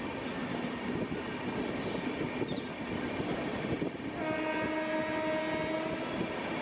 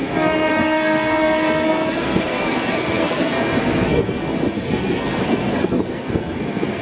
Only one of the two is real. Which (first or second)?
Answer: first